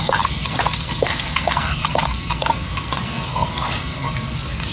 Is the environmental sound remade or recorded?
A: remade